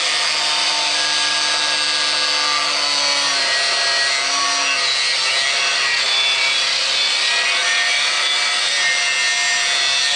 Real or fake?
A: real